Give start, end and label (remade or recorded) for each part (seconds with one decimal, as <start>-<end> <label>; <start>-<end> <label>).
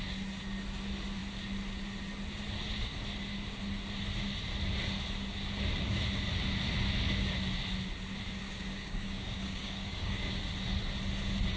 0.0-8.4 recorded; 8.4-10.4 remade; 10.4-11.6 recorded